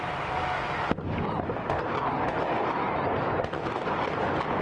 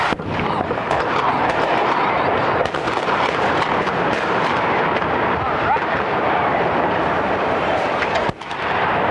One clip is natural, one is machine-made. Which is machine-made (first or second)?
second